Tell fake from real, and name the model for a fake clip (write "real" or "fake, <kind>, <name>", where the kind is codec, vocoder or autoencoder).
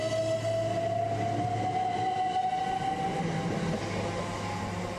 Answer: real